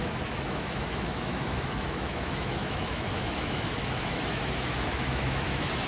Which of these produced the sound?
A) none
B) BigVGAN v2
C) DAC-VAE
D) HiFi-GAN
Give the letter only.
C